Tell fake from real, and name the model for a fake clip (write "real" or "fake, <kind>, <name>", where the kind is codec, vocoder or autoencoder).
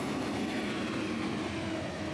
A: real